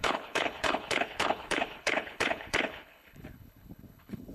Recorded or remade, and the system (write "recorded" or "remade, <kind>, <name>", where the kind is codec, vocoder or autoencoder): remade, codec, HILCodec